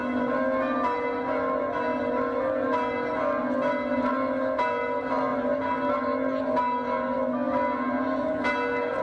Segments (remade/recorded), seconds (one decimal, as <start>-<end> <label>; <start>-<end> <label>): 0.0-9.0 recorded